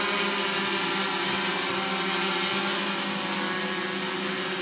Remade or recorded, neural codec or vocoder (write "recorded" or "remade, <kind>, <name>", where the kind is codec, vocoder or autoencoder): recorded